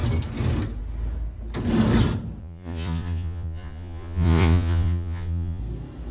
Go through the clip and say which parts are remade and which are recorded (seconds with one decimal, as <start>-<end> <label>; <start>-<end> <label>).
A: 0.0-2.4 recorded; 2.4-5.6 remade; 5.6-6.1 recorded